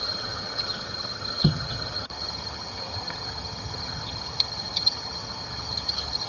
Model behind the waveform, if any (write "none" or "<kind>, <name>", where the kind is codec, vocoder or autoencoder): vocoder, HiFi-GAN